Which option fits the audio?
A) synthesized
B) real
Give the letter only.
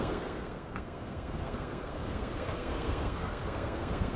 A